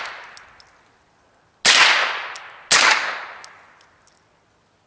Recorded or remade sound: recorded